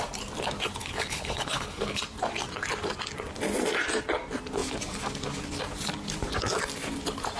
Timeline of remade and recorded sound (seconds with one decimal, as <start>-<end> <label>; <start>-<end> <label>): 0.0-0.8 recorded; 0.8-2.0 remade; 2.0-7.4 recorded